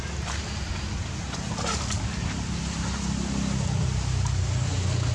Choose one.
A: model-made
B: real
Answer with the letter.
B